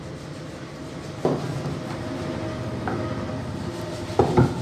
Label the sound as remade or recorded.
recorded